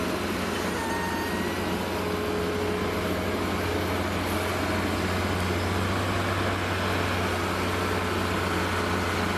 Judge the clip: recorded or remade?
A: recorded